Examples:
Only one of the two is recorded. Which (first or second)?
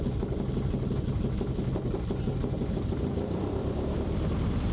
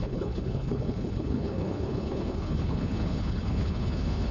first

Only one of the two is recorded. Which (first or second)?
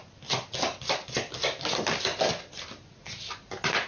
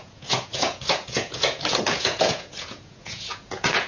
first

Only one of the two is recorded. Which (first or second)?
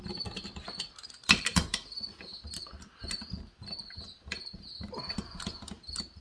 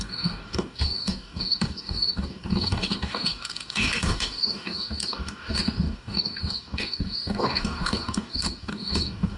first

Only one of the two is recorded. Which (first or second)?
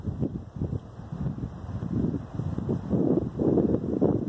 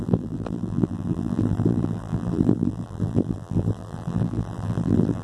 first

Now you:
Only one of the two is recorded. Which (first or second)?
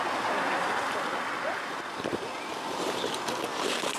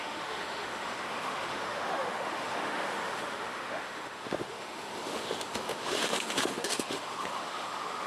first